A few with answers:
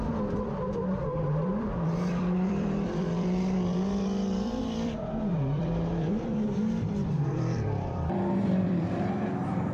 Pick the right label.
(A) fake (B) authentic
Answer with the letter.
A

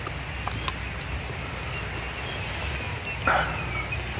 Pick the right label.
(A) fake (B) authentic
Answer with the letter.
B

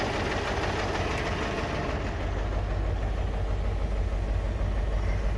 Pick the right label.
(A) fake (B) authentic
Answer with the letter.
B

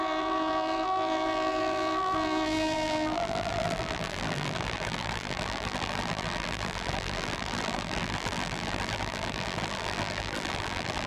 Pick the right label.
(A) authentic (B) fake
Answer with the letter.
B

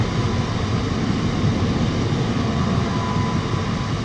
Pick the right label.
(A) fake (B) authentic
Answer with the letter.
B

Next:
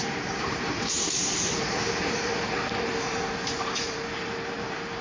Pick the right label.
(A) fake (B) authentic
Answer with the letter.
A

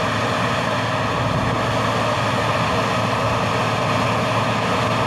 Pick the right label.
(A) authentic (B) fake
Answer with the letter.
A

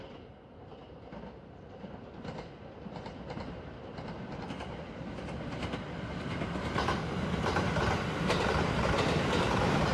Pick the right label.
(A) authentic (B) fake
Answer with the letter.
A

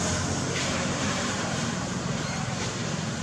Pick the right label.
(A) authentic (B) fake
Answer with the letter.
B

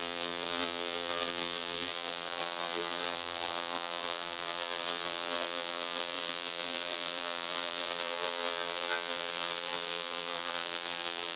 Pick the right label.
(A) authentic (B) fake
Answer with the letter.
B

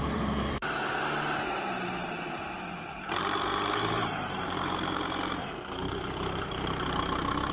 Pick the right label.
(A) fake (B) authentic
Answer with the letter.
A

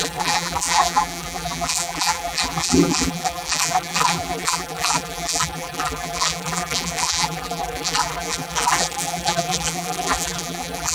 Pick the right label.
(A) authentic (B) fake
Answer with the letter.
B